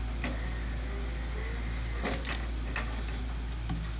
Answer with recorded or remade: recorded